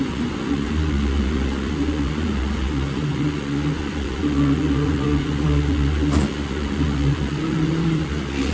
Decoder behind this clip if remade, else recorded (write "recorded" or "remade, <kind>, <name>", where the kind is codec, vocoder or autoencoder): remade, vocoder, Vocos